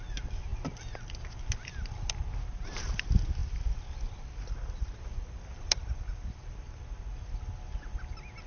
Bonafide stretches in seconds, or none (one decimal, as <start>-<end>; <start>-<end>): 0.0-3.4; 6.8-8.5